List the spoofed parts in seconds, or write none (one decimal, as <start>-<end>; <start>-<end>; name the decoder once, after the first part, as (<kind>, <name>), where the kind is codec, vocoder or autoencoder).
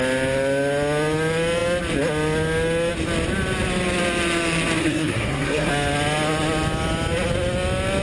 4.8-5.7 (codec, SNAC)